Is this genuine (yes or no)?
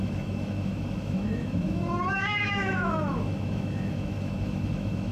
no